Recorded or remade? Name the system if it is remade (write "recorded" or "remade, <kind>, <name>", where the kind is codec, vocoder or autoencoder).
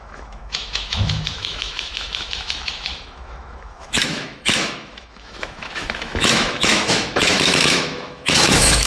remade, autoencoder, DAC-VAE